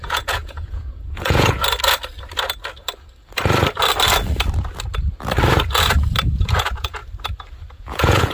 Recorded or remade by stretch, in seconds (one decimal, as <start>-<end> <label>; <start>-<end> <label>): 0.0-1.6 remade; 1.6-6.2 recorded; 6.2-7.0 remade; 7.0-7.7 recorded; 7.7-8.3 remade